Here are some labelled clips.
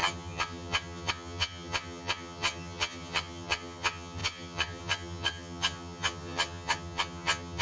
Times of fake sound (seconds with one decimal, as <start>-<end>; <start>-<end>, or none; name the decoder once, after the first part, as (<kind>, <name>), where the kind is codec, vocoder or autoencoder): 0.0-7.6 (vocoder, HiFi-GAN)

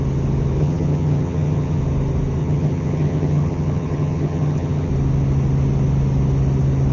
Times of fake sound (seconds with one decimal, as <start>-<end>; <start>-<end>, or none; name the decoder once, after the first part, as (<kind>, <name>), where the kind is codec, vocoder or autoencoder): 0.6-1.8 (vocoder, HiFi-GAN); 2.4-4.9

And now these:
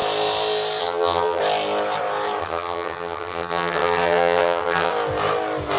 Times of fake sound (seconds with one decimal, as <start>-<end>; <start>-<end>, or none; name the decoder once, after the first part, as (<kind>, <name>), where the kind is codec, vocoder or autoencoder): 0.8-1.4 (vocoder, HiFi-GAN); 2.4-4.9

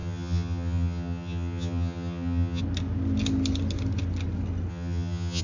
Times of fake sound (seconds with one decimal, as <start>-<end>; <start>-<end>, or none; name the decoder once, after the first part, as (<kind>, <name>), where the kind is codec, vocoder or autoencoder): 0.0-2.6 (vocoder, HiFi-GAN); 4.7-5.4